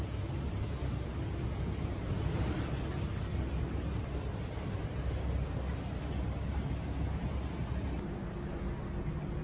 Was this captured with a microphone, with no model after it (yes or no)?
yes